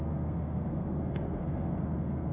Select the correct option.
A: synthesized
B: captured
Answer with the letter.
A